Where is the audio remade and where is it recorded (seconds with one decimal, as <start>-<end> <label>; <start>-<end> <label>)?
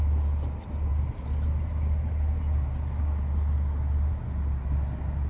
0.0-5.3 recorded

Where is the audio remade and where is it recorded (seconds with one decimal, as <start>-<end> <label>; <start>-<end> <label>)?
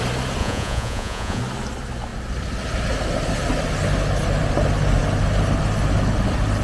0.0-0.4 recorded; 0.4-1.4 remade; 1.4-6.6 recorded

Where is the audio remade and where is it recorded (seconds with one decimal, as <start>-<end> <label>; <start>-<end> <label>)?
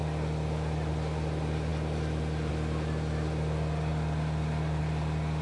0.0-5.4 recorded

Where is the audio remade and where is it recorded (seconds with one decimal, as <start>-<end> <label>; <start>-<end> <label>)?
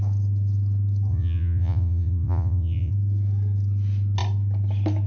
0.0-1.1 recorded; 1.1-2.9 remade; 2.9-5.1 recorded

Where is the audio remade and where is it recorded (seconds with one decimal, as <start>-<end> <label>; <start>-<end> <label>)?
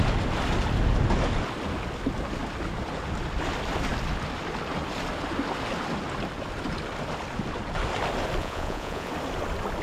0.0-8.4 recorded; 8.4-9.1 remade; 9.1-9.8 recorded